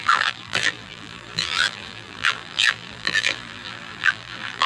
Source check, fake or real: fake